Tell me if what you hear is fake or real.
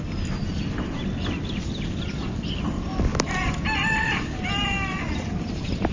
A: real